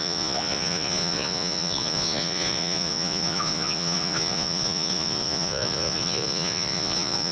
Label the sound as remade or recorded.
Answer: remade